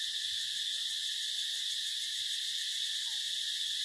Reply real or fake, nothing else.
real